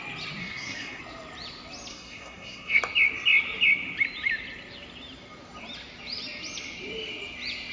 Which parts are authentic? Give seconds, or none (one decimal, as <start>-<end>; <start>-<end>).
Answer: 0.0-0.4; 1.0-1.9; 2.8-7.7